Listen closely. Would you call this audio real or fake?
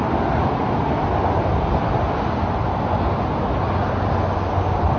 real